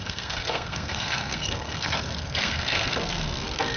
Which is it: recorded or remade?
remade